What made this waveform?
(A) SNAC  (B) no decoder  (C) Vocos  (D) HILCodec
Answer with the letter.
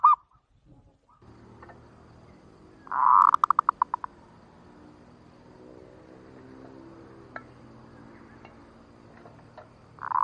B